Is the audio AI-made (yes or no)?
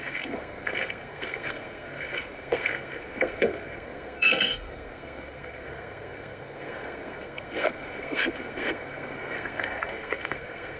yes